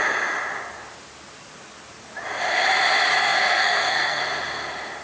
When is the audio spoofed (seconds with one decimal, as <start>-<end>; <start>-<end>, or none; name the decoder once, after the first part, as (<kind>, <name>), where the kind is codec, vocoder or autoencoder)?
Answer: 3.1-4.2 (codec, SNAC)